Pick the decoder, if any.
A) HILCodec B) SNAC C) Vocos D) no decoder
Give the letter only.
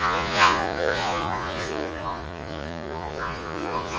C